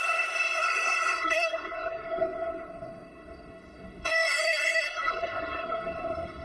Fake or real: fake